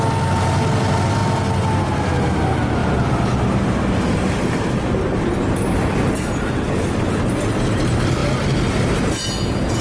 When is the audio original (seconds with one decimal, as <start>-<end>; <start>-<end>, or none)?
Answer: 0.0-2.8; 4.5-9.8